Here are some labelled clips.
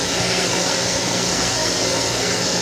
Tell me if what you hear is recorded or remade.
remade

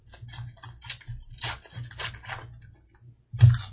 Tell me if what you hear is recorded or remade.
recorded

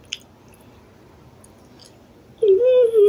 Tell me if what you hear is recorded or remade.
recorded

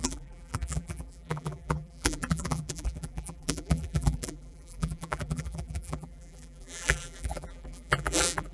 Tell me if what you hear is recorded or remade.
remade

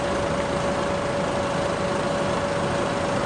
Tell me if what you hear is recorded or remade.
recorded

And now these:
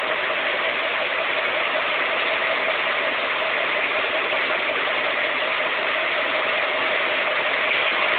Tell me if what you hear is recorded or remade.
recorded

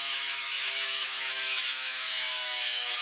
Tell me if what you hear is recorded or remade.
remade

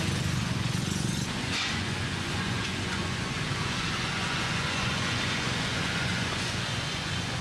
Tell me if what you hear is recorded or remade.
remade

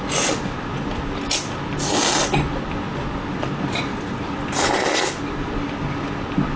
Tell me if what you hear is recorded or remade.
recorded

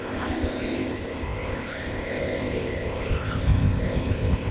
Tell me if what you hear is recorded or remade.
remade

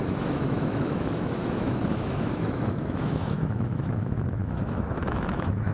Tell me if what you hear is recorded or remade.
remade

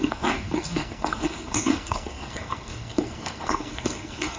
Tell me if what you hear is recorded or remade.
remade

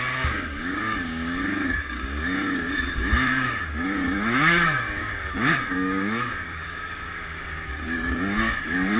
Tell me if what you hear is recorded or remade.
remade